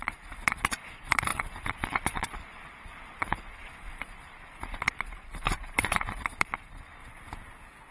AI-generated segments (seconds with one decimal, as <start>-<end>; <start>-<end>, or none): 0.0-7.0